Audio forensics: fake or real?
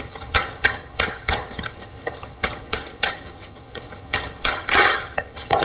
fake